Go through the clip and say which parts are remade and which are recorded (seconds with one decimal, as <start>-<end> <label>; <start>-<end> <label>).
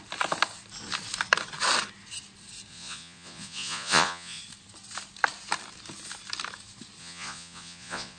0.0-2.7 recorded; 2.7-4.4 remade; 4.4-7.0 recorded; 7.0-8.2 remade